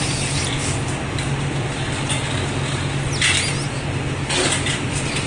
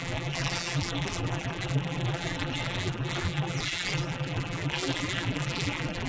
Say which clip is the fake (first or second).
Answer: second